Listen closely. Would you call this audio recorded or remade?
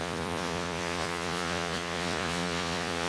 remade